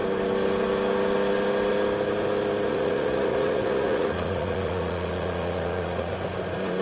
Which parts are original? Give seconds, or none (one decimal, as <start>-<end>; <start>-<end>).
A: 0.0-2.7; 6.1-6.8